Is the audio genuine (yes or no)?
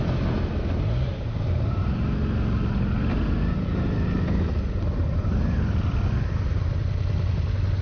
yes